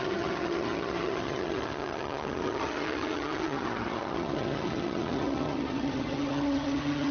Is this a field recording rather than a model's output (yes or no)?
no